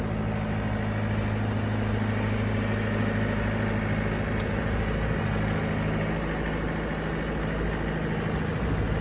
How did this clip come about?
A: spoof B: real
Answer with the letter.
B